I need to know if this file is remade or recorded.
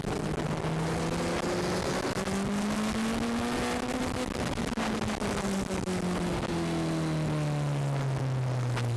recorded